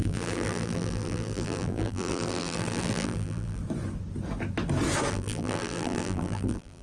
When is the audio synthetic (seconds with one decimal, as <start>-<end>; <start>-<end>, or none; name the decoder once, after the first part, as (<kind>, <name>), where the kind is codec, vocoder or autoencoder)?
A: 0.0-3.6 (vocoder, BigVGAN v2); 5.1-6.8